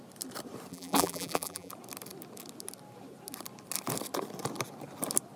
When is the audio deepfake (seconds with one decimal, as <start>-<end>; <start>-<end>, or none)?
0.7-1.7